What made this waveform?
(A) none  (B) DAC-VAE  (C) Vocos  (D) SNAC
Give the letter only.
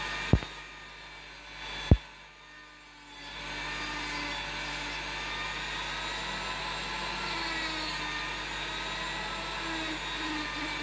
A